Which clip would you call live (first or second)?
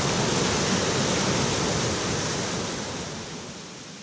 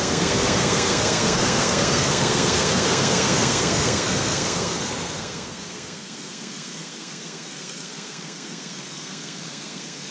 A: first